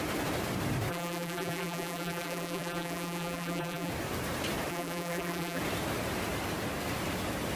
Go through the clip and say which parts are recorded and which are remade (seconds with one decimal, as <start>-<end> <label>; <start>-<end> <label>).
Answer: 0.0-0.9 recorded; 0.9-3.9 remade; 3.9-4.7 recorded; 4.7-5.6 remade; 5.6-7.6 recorded